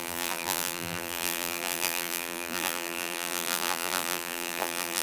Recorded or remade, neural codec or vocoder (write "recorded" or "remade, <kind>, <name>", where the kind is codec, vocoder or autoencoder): remade, vocoder, BigVGAN v2